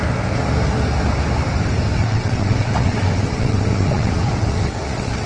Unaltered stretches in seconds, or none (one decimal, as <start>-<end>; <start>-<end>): 0.0-2.0